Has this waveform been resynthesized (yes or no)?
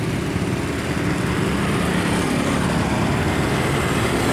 no